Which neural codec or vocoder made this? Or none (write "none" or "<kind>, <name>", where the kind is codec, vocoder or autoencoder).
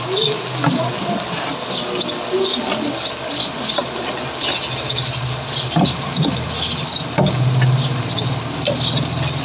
none